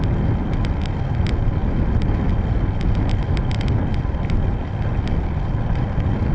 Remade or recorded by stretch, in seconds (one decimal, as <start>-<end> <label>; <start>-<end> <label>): 0.0-6.3 recorded